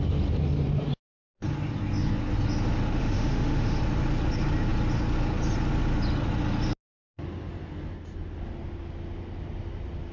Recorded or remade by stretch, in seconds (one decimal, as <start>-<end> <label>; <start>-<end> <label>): 0.0-3.0 recorded; 3.0-3.8 remade; 3.8-10.1 recorded